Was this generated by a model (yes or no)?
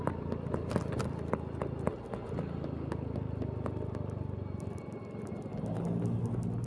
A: no